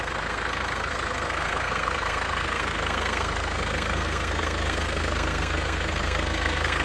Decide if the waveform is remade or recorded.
remade